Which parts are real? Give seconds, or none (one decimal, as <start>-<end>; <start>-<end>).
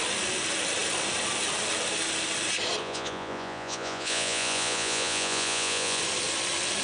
0.0-2.8; 6.0-6.8